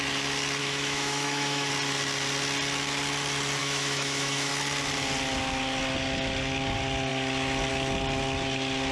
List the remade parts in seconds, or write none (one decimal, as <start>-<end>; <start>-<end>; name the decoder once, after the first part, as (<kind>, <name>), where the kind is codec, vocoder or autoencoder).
0.6-1.7 (autoencoder, DAC-VAE); 3.6-4.5